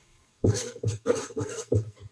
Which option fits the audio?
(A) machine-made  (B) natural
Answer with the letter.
A